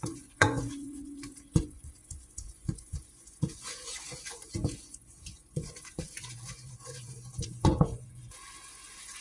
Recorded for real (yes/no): no